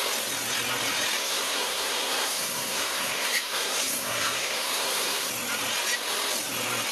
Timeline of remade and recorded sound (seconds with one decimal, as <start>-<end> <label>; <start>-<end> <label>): 0.0-1.2 recorded; 1.2-5.3 remade; 5.3-6.9 recorded